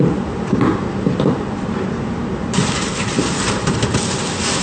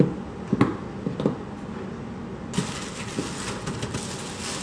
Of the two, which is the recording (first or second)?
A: second